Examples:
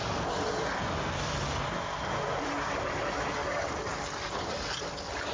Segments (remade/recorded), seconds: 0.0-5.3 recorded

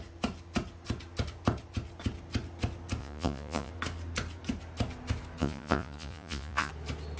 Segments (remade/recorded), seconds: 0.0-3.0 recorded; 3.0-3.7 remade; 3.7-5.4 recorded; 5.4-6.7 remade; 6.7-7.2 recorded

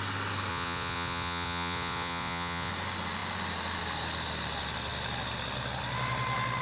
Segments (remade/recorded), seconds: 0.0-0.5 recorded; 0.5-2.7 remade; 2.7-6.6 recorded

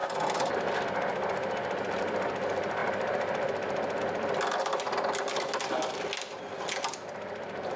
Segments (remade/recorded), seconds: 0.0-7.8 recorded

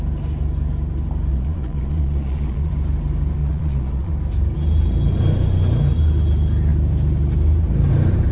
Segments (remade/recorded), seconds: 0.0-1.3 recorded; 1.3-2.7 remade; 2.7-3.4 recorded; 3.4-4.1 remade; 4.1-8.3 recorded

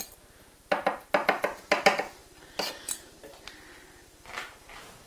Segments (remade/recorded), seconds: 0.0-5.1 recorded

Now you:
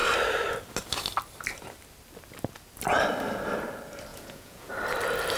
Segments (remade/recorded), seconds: 0.0-4.1 recorded; 4.1-4.7 remade; 4.7-5.4 recorded

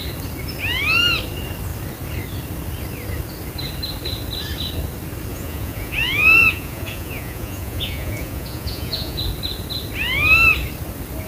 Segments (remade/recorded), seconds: 0.0-5.3 recorded; 5.3-9.2 remade; 9.2-11.3 recorded